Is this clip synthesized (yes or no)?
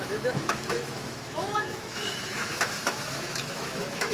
yes